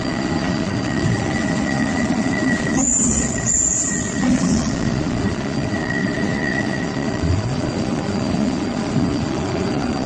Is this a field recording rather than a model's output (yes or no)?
no